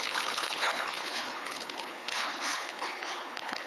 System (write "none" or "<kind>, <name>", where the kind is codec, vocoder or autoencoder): codec, HILCodec